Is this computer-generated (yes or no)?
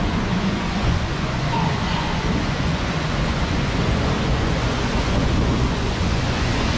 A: yes